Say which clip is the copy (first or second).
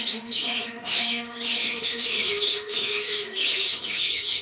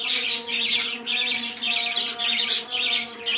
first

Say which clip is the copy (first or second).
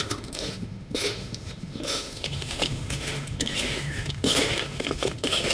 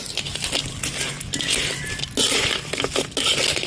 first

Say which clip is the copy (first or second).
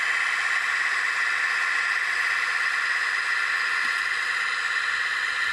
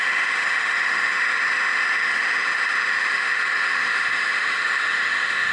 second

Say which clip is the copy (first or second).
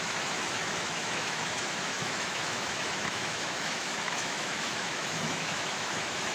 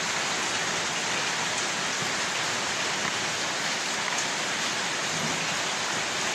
first